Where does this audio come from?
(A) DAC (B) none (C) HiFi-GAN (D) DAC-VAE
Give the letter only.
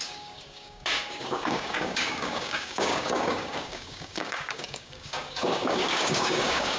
A